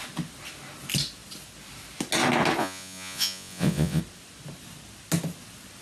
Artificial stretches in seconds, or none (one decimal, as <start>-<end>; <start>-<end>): 2.6-4.0